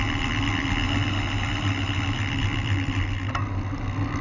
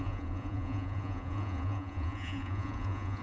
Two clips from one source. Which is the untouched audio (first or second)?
first